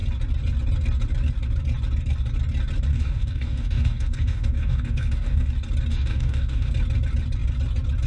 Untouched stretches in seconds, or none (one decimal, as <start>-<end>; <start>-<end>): 0.0-2.9; 5.5-5.9; 6.7-8.1